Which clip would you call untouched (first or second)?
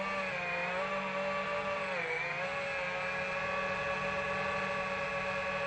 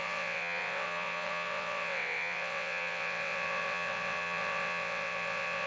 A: first